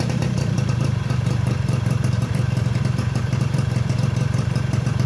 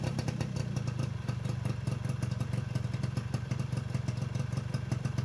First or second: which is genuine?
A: second